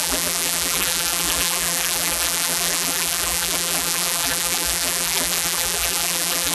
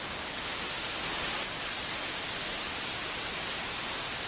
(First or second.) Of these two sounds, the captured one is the second